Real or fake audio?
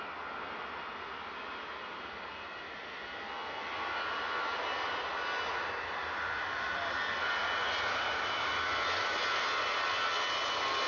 real